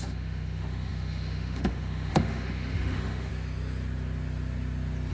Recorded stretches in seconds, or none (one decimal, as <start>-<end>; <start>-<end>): 3.3-5.1